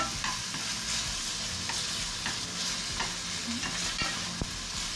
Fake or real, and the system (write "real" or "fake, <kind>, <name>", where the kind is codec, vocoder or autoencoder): real